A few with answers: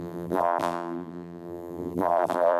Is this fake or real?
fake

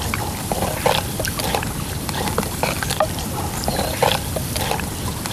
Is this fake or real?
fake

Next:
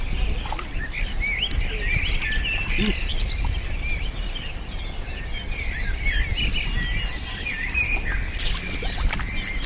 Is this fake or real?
real